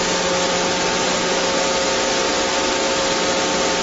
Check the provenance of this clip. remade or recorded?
recorded